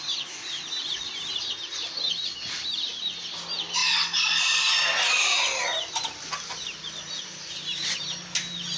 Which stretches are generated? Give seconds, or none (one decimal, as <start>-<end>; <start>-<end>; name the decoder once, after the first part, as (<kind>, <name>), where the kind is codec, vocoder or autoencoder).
none

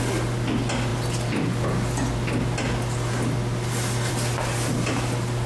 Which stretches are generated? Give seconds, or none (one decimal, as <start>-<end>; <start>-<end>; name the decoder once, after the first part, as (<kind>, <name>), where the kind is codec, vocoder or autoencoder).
none

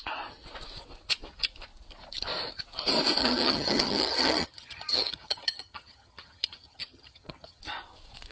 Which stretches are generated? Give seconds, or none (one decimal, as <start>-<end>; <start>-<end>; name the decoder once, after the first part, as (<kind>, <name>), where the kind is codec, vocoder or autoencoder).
3.2-7.6 (vocoder, HiFi-GAN)

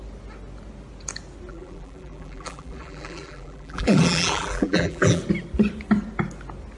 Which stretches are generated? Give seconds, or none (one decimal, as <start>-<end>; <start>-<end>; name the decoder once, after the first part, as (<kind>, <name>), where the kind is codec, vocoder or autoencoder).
1.5-5.2 (vocoder, BigVGAN v2)

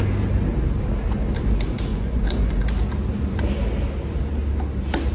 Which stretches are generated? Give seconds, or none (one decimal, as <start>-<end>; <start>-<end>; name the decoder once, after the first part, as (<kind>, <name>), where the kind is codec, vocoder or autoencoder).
1.9-2.6 (vocoder, Vocos)

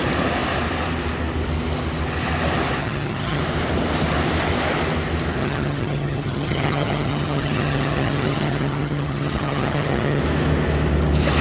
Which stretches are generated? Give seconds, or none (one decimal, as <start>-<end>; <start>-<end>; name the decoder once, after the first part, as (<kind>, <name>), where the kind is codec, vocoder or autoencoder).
2.8-3.4 (vocoder, HiFi-GAN); 5.4-10.2

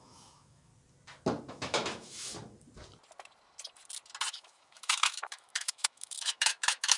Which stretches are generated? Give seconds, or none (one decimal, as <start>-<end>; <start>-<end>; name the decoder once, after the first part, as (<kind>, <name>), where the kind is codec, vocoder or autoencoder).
0.0-0.7 (autoencoder, DAC-VAE); 1.5-2.3; 4.3-7.0